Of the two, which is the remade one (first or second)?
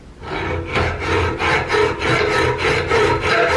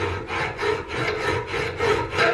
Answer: second